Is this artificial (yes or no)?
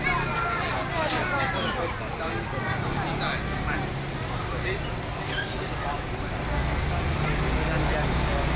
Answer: no